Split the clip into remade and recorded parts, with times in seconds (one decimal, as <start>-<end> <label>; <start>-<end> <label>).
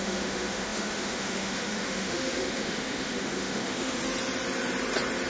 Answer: 0.0-4.0 remade; 4.0-5.3 recorded